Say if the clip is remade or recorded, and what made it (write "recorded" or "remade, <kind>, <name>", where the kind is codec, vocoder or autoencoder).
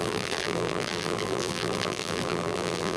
remade, vocoder, BigVGAN v2